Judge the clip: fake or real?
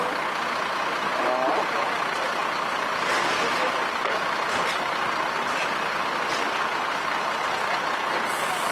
real